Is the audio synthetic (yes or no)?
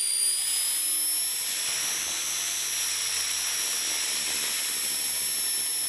no